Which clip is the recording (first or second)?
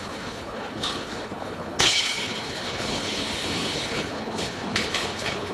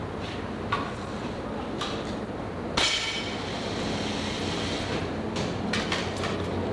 second